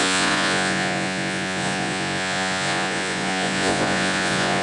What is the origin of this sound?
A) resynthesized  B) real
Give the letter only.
A